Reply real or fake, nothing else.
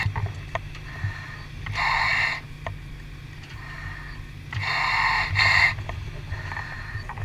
real